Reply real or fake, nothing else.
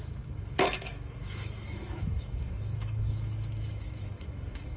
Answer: fake